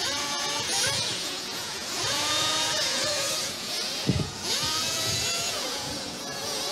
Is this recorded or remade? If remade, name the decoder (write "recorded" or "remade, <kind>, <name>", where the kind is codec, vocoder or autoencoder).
remade, vocoder, Vocos